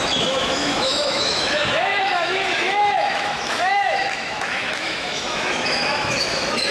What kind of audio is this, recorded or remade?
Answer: remade